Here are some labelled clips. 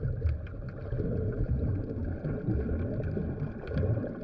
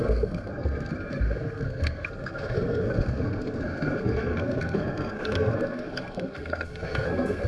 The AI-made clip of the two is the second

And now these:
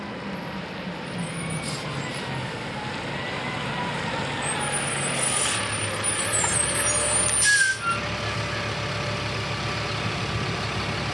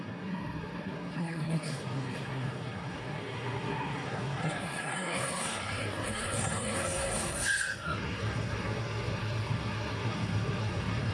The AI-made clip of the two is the second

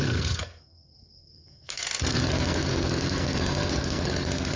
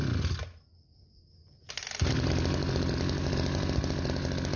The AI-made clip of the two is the first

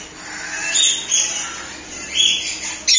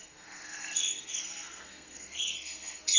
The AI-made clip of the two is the second